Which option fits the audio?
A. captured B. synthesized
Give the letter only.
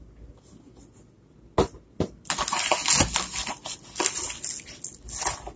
A